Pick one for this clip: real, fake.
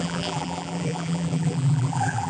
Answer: fake